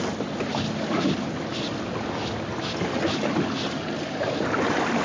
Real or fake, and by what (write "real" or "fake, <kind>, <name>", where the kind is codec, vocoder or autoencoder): real